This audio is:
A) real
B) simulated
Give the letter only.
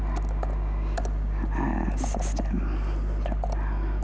A